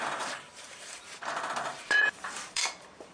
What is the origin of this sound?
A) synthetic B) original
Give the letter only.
A